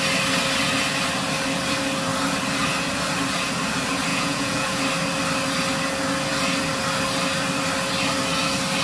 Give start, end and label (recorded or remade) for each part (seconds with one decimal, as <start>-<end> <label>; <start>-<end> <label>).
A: 0.0-4.1 recorded; 4.1-4.8 remade; 4.8-8.8 recorded